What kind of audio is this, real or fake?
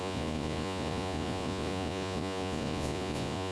fake